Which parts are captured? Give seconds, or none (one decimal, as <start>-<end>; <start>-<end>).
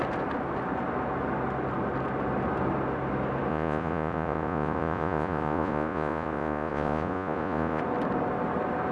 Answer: 0.0-3.5; 7.8-8.9